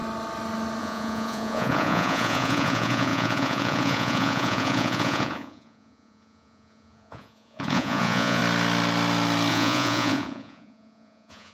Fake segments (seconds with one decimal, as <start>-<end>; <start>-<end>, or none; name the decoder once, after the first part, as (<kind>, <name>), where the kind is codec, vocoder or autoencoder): 0.8-8.4 (vocoder, Vocos); 9.5-11.5